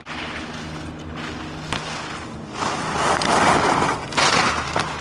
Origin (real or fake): real